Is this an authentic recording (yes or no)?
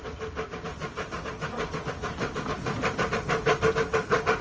yes